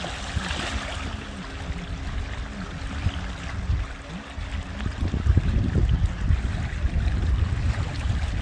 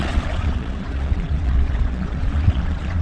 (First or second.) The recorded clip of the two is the first